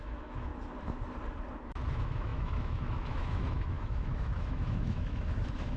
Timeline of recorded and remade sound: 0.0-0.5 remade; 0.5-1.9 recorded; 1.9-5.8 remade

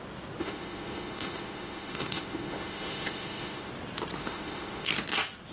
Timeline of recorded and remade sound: 0.0-0.4 recorded; 0.4-3.7 remade; 3.7-4.2 recorded; 4.2-4.9 remade; 4.9-5.5 recorded

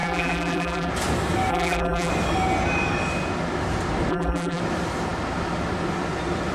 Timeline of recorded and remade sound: 0.0-0.9 remade; 0.9-1.5 recorded; 1.5-2.1 remade; 2.1-4.1 recorded; 4.1-4.6 remade; 4.6-6.5 recorded

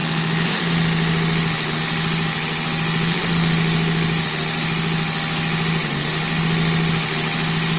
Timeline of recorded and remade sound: 0.0-7.8 recorded

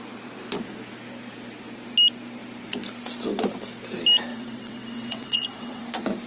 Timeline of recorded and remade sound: 0.0-4.3 recorded; 4.3-5.8 remade; 5.8-6.3 recorded

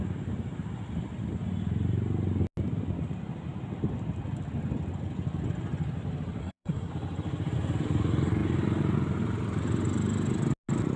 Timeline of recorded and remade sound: 0.0-6.4 recorded; 6.4-6.9 remade; 6.9-11.0 recorded

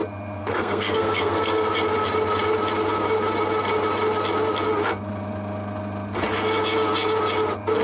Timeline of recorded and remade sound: 0.0-0.4 recorded; 0.4-1.7 remade; 1.7-7.8 recorded